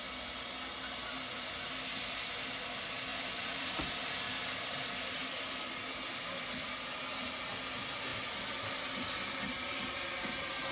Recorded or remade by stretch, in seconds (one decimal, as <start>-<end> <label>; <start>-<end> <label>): 0.0-3.1 recorded; 3.1-4.8 remade; 4.8-5.2 recorded; 5.2-5.9 remade; 5.9-8.1 recorded; 8.1-9.0 remade; 9.0-10.7 recorded